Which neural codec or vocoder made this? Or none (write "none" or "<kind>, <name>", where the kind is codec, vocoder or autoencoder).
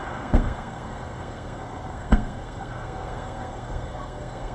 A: codec, SNAC